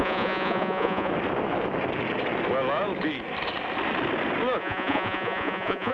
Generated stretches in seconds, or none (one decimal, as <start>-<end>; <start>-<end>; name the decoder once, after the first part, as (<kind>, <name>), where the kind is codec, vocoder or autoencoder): 0.0-1.1 (vocoder, Vocos); 4.6-5.9